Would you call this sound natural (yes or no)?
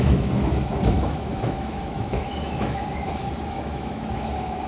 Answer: no